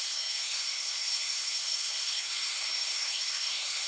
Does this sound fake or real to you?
fake